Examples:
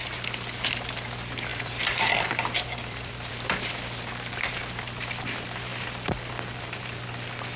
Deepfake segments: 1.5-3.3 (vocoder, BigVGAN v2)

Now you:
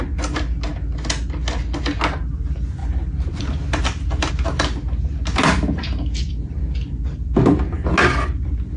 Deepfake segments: 2.8-4.3 (vocoder, BigVGAN v2); 7.2-7.9

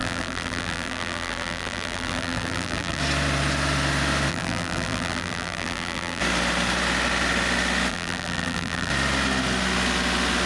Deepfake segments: 0.0-3.0 (vocoder, BigVGAN v2); 4.3-6.2; 7.9-8.9

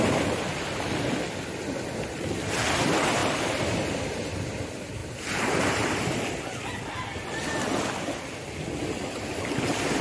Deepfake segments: 5.0-6.0 (vocoder, BigVGAN v2)

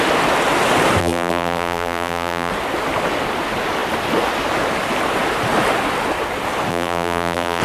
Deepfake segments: 1.0-2.5 (vocoder, BigVGAN v2); 6.7-7.6

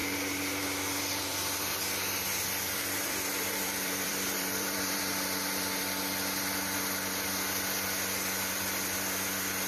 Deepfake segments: 1.3-5.0 (vocoder, BigVGAN v2)

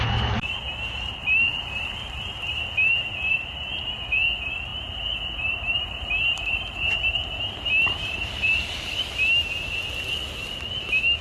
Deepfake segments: 1.2-2.6 (vocoder, BigVGAN v2); 3.1-3.9; 4.7-9.0

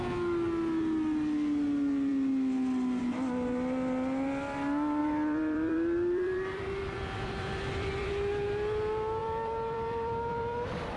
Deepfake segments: 5.0-8.1 (vocoder, BigVGAN v2); 9.2-11.0